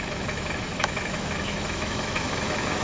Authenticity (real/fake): fake